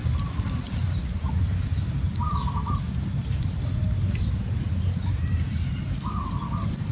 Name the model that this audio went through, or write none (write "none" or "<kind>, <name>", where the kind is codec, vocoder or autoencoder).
none